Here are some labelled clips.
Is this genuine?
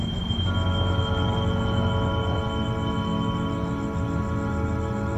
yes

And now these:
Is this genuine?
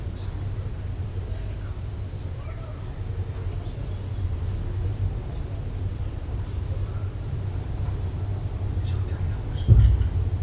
yes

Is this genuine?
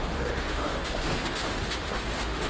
no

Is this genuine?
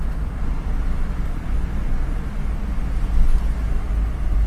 yes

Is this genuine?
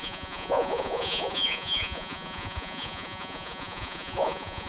no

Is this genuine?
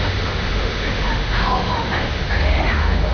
no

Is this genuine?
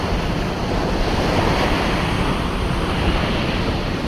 yes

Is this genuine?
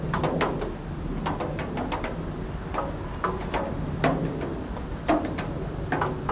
yes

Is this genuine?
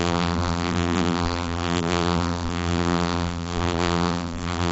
no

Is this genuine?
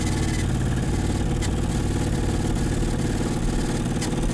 yes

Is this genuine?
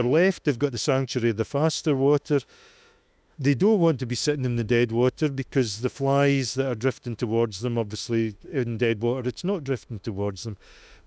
no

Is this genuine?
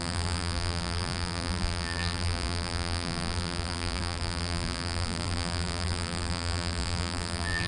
no